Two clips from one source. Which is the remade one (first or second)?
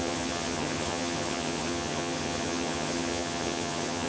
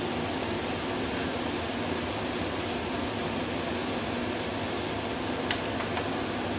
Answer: first